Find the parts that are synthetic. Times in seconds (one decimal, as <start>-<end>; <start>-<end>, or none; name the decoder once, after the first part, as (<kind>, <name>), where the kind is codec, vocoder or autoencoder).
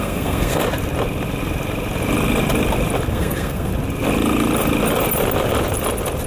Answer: 0.0-0.6 (codec, SNAC); 3.1-3.7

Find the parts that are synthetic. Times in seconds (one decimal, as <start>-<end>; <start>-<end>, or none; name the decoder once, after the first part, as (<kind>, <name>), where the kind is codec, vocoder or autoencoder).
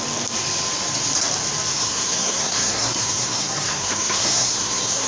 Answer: 1.7-5.1 (codec, SNAC)